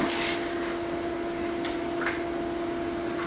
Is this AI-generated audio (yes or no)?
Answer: no